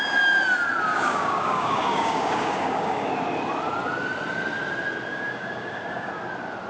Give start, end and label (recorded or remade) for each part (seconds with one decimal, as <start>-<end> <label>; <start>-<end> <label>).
0.0-0.9 recorded; 0.9-3.1 remade; 3.1-5.1 recorded; 5.1-6.1 remade; 6.1-6.7 recorded